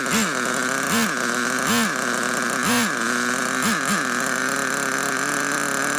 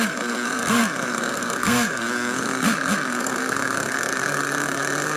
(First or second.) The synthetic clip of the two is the second